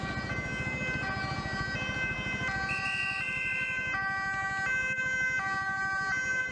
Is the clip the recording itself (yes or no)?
yes